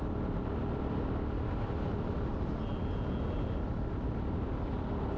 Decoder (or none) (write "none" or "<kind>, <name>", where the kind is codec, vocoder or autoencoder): none